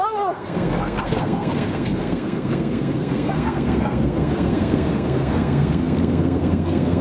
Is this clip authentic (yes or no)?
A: no